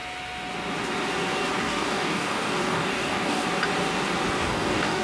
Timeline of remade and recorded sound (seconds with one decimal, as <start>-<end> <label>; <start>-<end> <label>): 0.0-1.6 recorded; 1.6-3.4 remade; 3.4-4.4 recorded; 4.4-5.0 remade